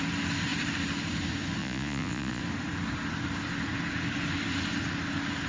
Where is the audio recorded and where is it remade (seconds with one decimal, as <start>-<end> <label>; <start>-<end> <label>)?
0.0-1.6 recorded; 1.6-2.4 remade; 2.4-5.5 recorded